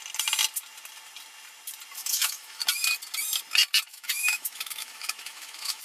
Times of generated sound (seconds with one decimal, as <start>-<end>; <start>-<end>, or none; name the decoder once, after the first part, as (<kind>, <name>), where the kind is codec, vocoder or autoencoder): 2.0-2.6 (autoencoder, DAC-VAE); 3.9-5.8

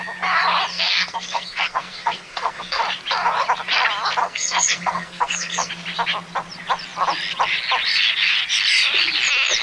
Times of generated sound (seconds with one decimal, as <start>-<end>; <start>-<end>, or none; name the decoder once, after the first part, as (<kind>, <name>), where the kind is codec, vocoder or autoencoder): 0.7-2.8 (codec, SNAC); 4.2-5.7

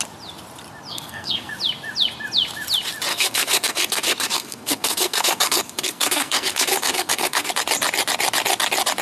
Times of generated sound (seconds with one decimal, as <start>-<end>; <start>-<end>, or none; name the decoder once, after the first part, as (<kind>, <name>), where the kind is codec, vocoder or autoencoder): 0.9-1.5 (codec, SNAC); 3.1-7.5